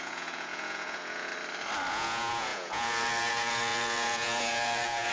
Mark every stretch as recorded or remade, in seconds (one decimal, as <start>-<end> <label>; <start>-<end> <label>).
0.0-1.3 remade; 1.3-1.9 recorded; 1.9-5.1 remade